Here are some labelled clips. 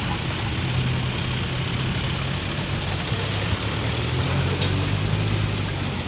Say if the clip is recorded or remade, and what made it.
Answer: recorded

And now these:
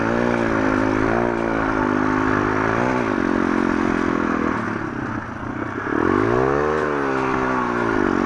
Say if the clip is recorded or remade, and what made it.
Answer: recorded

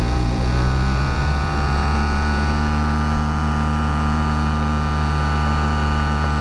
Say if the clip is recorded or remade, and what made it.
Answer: remade, vocoder, Vocos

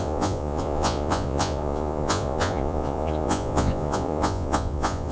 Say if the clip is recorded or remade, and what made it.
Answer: remade, vocoder, Vocos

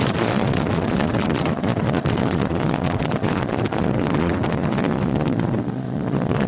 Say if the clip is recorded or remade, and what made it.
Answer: remade, vocoder, Vocos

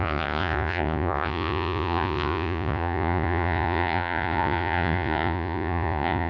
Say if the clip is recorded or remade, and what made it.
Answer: remade, vocoder, Vocos